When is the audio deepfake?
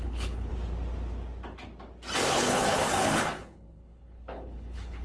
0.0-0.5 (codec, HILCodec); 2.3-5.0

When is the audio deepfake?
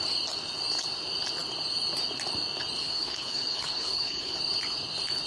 2.8-4.4 (codec, HILCodec)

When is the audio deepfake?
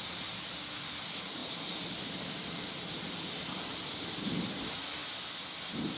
none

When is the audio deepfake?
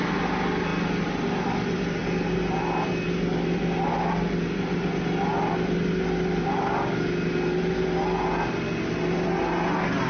none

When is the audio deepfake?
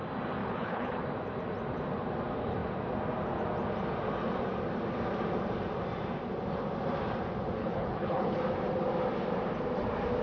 0.4-1.0 (codec, HILCodec); 7.6-8.4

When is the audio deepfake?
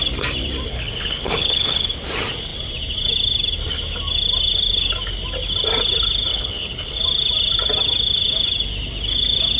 0.7-1.8 (codec, HILCodec); 6.3-7.0